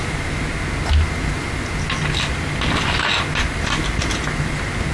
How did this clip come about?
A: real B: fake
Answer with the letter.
A